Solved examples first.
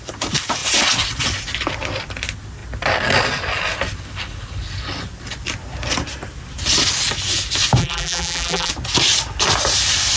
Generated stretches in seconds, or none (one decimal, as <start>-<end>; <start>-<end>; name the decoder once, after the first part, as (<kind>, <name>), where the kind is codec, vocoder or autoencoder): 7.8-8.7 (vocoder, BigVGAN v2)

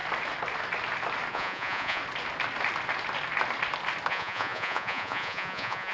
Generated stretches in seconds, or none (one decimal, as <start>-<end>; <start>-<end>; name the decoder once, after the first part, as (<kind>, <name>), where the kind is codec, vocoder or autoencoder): 1.3-2.0 (vocoder, Vocos); 4.1-5.9

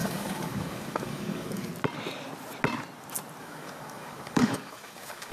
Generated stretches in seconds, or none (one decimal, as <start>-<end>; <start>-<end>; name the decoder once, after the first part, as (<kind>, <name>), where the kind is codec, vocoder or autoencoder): 0.0-1.7 (codec, DAC); 3.4-5.3

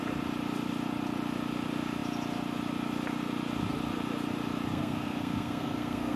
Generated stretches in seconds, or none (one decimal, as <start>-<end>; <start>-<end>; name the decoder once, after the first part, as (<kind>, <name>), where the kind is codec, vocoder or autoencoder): 4.7-6.2 (codec, SNAC)

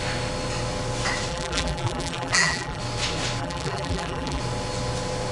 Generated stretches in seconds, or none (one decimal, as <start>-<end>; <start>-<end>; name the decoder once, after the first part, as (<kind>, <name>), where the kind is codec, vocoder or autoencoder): 1.3-2.8 (vocoder, BigVGAN v2); 3.4-4.4

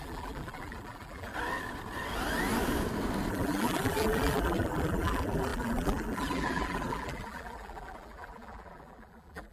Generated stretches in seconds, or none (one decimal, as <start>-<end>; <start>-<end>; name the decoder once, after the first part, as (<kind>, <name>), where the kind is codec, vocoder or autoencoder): 0.0-1.3 (vocoder, BigVGAN v2); 3.3-9.5